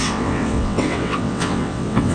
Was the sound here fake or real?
fake